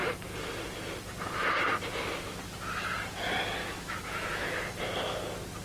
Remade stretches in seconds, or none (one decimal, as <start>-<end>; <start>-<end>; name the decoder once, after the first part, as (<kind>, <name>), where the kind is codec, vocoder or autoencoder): 3.6-4.8 (autoencoder, DAC-VAE)